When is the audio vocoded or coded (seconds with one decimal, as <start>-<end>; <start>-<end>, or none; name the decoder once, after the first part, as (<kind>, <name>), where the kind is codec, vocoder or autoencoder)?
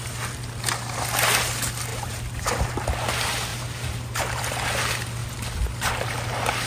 1.9-2.7 (vocoder, BigVGAN v2); 3.5-4.4; 5.2-5.9